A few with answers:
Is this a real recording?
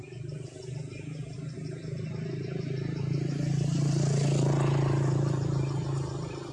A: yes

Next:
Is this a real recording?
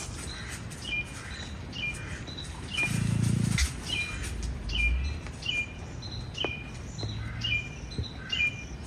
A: yes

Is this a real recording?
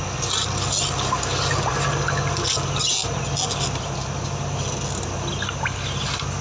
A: yes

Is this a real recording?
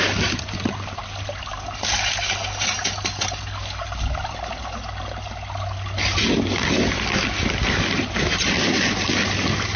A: yes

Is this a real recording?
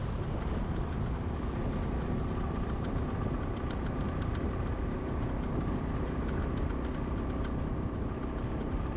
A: yes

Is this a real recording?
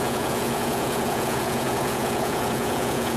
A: no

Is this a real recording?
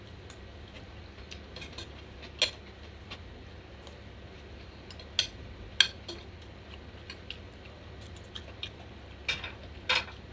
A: yes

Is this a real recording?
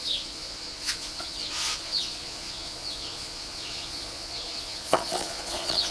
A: no